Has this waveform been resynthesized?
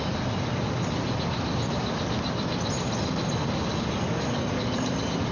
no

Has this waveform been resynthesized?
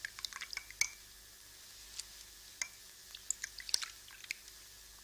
no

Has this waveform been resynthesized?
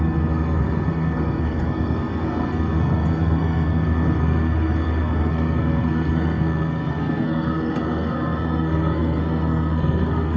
yes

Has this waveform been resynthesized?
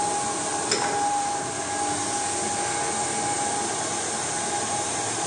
no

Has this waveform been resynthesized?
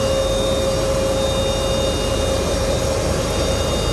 no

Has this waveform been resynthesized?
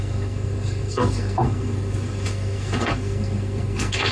yes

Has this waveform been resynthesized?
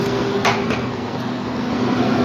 yes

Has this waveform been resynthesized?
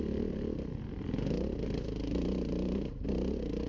no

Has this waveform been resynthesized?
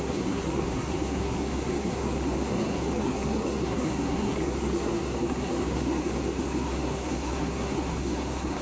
yes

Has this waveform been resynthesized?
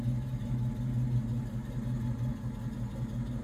no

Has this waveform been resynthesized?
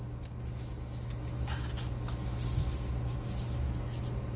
no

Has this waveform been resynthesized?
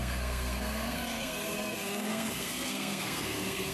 yes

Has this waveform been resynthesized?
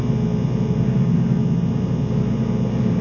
no